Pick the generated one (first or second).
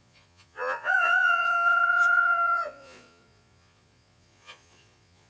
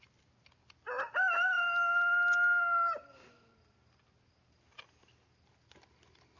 first